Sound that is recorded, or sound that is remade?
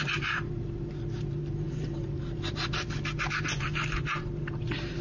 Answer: remade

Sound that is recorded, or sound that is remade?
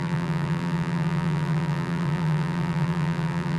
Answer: remade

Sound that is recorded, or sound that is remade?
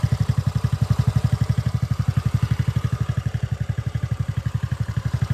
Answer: remade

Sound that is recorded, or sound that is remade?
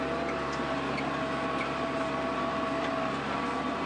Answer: recorded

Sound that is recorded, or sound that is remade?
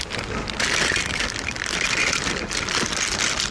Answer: recorded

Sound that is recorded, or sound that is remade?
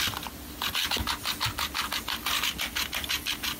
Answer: recorded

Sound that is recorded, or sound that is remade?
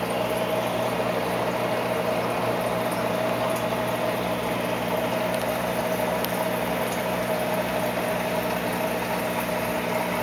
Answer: recorded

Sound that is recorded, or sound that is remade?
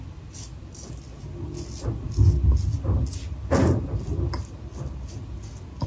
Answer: recorded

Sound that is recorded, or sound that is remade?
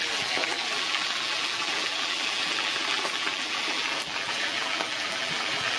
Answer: remade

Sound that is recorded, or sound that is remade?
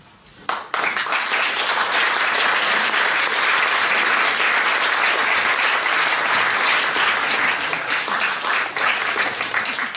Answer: recorded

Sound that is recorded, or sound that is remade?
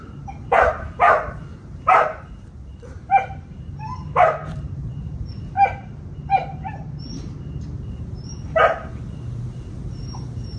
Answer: remade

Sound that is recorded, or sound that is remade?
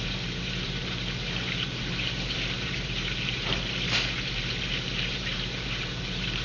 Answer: remade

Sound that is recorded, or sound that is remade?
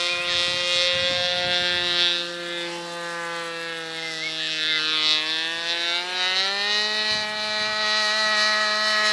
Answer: recorded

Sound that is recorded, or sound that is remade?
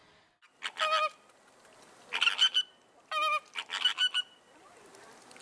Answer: recorded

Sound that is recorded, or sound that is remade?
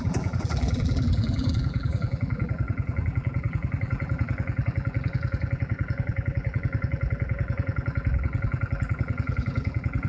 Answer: remade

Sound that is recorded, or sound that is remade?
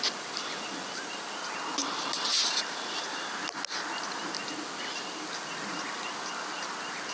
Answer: recorded